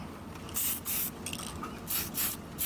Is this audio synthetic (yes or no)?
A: no